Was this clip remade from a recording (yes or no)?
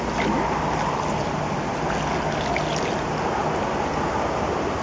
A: no